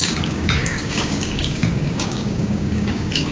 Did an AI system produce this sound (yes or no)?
yes